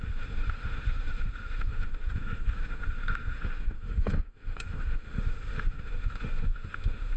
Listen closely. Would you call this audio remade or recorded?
remade